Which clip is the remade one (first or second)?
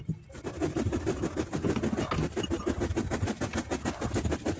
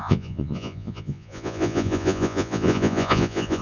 second